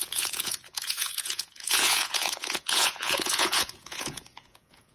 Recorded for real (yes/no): no